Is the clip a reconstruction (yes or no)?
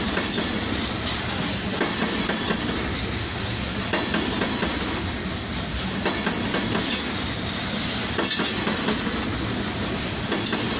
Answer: no